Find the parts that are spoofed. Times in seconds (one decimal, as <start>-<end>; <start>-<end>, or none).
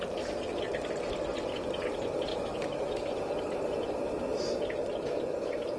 2.3-3.1